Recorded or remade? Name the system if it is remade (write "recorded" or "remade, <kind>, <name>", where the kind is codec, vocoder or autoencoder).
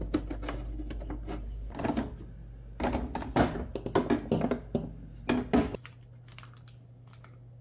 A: recorded